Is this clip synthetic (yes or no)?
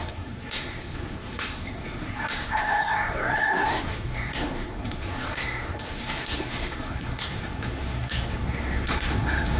yes